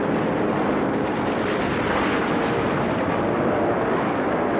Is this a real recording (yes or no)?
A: yes